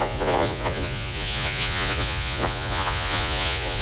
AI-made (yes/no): yes